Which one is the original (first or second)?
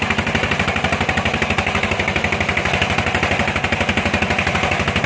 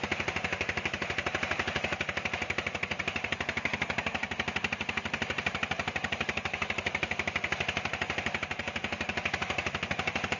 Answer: first